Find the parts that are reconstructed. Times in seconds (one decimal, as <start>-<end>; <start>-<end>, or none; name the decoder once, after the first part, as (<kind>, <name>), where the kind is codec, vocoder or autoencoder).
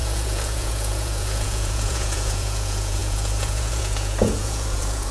0.0-5.1 (vocoder, Vocos)